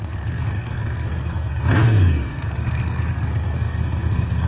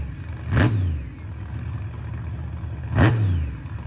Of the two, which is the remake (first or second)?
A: first